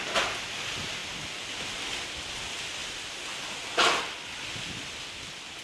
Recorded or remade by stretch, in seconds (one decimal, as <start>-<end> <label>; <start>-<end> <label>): 0.0-5.6 recorded